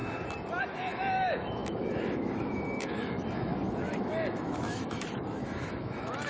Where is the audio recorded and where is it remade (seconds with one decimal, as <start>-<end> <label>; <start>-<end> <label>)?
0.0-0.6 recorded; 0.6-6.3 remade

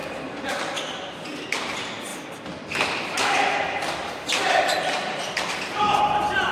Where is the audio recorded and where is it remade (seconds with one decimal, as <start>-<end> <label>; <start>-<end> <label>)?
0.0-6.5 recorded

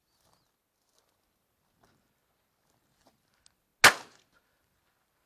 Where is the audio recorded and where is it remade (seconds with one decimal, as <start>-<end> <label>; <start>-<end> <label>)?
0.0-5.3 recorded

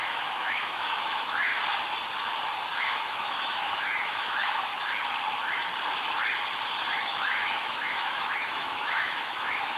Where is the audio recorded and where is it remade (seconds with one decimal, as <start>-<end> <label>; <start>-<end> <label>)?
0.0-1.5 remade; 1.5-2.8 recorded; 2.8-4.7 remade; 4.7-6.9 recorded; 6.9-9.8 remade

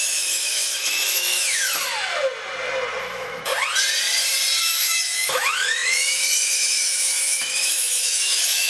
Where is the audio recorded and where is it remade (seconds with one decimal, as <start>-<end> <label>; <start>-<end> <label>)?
0.0-1.9 remade; 1.9-3.0 recorded; 3.0-3.5 remade; 3.5-4.6 recorded; 4.6-8.7 remade

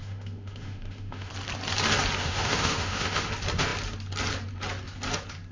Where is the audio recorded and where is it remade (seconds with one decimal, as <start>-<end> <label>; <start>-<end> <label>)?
0.0-1.3 remade; 1.3-2.2 recorded; 2.2-3.3 remade; 3.3-5.5 recorded

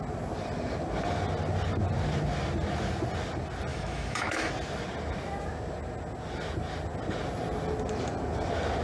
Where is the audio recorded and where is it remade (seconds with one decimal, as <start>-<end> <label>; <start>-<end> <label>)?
0.0-3.7 recorded; 3.7-4.5 remade; 4.5-8.8 recorded